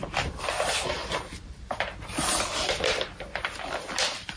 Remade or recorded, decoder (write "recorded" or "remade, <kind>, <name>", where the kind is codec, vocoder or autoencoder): recorded